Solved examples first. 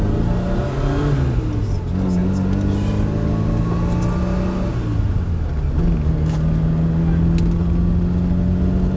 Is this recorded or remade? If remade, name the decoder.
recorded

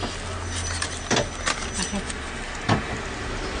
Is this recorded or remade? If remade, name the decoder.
recorded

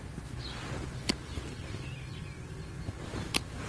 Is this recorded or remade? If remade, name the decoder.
recorded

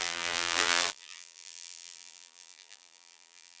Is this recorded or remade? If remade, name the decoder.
remade, vocoder, BigVGAN v2